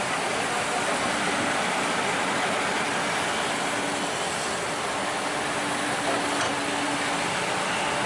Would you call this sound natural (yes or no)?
yes